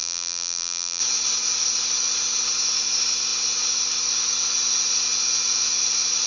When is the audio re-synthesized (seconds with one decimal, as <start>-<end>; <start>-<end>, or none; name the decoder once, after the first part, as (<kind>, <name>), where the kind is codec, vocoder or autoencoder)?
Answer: 0.0-1.0 (vocoder, BigVGAN v2)